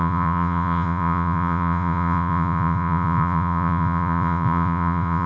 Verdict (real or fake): fake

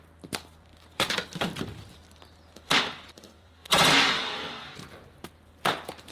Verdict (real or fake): fake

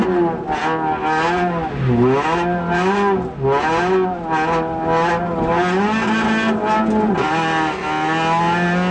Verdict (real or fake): real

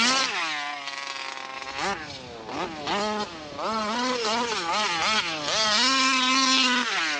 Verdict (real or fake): real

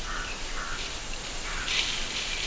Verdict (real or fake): real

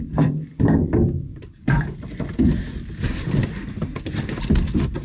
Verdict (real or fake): real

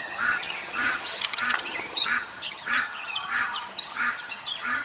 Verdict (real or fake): fake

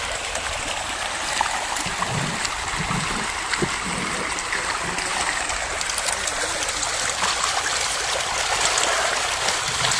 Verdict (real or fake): real